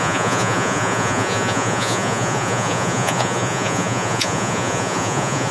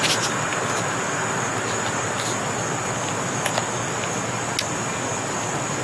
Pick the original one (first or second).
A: second